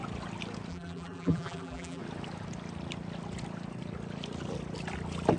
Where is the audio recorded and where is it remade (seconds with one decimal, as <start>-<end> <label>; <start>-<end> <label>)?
0.0-0.7 recorded; 0.7-2.0 remade; 2.0-5.4 recorded